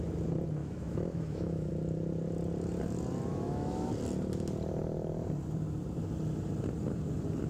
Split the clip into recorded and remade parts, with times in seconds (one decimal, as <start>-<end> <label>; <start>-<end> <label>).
0.0-0.6 recorded; 0.6-1.7 remade; 1.7-3.3 recorded; 3.3-3.9 remade; 3.9-7.5 recorded